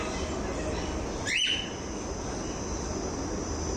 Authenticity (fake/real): real